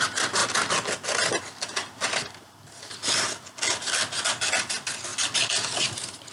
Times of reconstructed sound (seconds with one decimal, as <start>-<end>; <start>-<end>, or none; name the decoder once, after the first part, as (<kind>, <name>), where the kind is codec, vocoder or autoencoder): none